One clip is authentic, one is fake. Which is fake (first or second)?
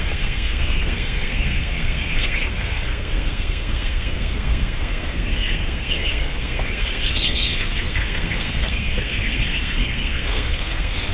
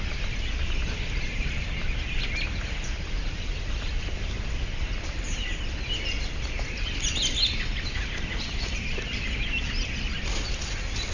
first